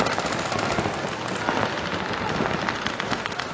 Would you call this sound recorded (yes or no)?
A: yes